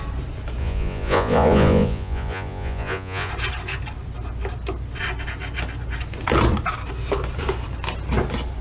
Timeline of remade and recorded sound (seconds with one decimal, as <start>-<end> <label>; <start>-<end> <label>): 0.0-0.6 recorded; 0.6-3.3 remade; 3.3-8.6 recorded